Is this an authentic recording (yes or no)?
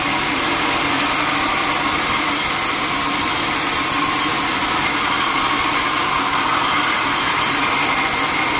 no